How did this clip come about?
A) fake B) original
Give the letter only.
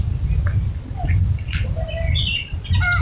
B